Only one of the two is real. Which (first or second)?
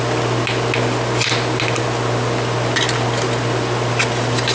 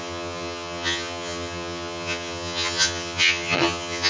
first